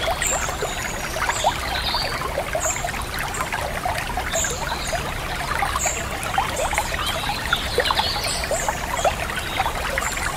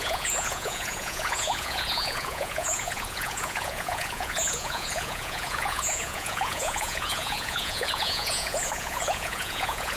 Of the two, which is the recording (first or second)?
first